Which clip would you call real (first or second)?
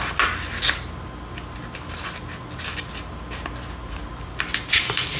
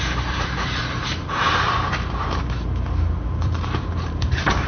first